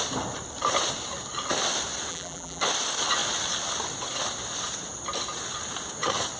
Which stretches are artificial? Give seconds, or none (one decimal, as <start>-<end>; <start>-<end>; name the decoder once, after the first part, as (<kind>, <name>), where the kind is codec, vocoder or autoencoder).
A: 2.1-2.6 (vocoder, BigVGAN v2)